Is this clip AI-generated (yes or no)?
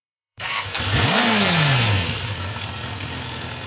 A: yes